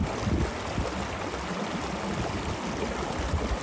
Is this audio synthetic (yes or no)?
no